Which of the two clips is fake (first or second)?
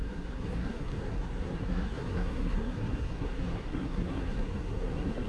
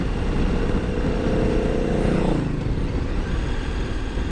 first